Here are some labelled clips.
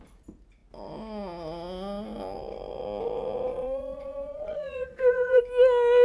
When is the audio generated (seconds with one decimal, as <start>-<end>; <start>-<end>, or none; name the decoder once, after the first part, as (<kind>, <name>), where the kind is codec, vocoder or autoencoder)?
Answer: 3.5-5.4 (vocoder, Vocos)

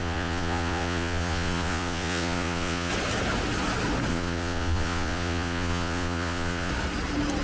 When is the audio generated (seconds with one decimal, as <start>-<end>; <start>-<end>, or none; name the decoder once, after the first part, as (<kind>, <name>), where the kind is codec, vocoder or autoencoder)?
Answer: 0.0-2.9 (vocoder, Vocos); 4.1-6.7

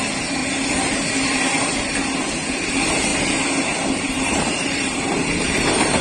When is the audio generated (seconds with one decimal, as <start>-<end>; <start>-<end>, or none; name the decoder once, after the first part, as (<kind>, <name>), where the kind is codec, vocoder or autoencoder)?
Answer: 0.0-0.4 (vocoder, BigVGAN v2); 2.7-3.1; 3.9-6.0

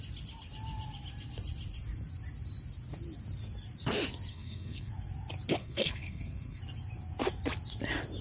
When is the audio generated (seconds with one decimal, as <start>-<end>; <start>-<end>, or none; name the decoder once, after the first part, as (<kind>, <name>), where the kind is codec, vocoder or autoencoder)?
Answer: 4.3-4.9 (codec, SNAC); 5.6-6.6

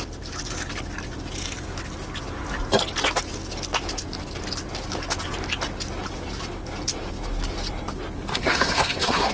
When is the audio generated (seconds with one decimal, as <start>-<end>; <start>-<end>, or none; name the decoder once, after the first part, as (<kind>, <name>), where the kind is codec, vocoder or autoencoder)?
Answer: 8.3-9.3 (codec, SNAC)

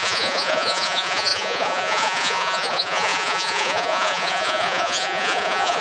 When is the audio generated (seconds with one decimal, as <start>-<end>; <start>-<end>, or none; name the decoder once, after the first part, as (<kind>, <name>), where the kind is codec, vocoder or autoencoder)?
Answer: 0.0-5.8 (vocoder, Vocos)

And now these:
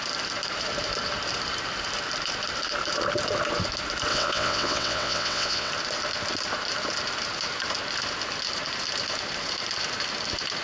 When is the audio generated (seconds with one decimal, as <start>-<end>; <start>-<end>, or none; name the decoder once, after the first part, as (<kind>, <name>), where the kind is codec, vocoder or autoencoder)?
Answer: 4.1-5.7 (vocoder, WaveNeXt)